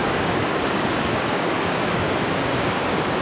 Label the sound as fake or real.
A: fake